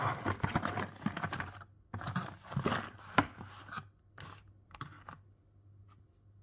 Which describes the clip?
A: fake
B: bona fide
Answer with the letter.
B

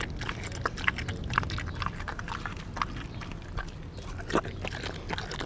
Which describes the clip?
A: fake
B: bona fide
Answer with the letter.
B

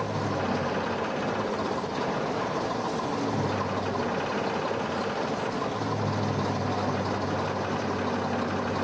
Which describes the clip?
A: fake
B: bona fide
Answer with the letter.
B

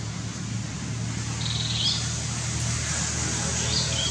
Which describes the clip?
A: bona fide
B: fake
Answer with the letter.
A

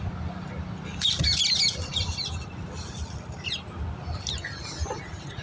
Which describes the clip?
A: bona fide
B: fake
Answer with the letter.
A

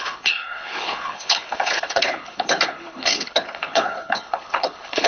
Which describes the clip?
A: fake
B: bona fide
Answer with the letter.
A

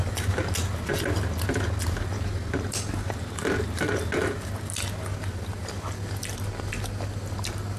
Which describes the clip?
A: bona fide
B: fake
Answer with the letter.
A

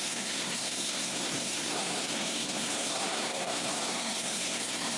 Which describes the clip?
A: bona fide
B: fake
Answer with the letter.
B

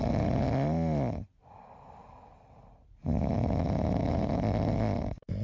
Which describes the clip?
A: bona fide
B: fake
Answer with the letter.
A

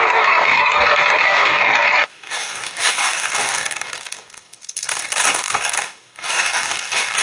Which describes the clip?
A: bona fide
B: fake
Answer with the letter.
B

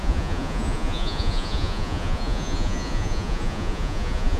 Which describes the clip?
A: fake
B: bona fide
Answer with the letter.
A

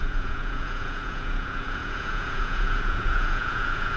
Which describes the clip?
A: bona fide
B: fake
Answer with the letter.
B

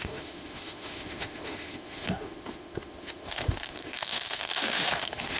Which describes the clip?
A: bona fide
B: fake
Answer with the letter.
B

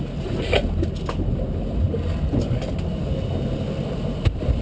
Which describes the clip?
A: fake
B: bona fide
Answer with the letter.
B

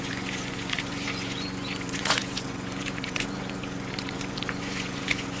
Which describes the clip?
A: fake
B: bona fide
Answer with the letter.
A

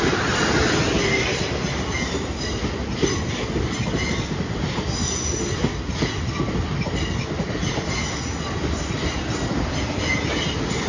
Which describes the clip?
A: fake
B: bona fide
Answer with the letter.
B